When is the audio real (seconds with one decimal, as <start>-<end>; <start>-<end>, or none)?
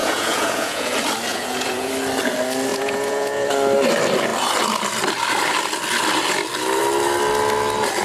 0.9-1.3; 1.9-2.7; 3.5-8.0